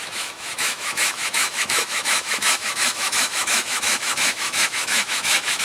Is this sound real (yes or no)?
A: no